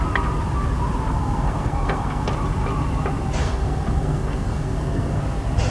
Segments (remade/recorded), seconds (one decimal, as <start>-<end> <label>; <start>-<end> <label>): 0.0-1.1 recorded; 1.1-2.3 remade; 2.3-3.4 recorded; 3.4-5.2 remade; 5.2-5.7 recorded